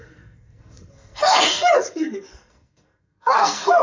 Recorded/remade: remade